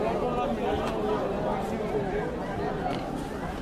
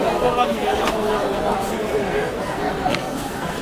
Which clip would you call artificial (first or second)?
second